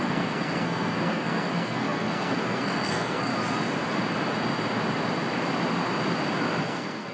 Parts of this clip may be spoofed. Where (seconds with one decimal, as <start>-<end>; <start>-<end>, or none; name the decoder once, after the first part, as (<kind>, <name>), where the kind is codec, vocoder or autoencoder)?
0.0-3.3 (codec, SNAC); 6.6-7.1

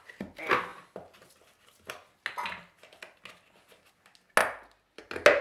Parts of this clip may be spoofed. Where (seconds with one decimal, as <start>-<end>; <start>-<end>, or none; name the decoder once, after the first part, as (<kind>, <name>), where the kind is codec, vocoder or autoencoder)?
none

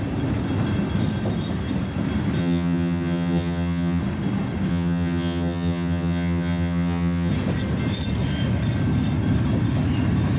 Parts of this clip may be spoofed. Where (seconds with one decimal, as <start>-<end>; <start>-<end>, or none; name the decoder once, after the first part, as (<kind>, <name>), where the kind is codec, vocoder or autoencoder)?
2.4-4.0 (vocoder, HiFi-GAN); 4.7-7.3

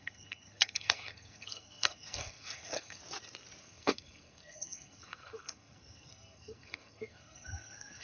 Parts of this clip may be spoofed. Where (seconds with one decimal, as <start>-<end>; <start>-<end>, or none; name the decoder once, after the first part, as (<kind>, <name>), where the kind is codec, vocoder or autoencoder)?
0.0-3.0 (codec, SNAC); 3.6-8.0

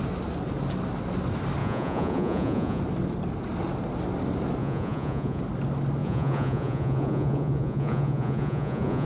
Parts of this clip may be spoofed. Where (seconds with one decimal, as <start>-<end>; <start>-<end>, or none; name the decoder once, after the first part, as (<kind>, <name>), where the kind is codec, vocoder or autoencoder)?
1.6-2.8 (vocoder, Vocos); 4.6-5.4; 6.0-9.1